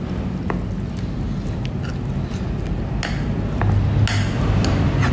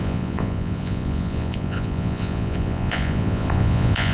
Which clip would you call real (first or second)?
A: first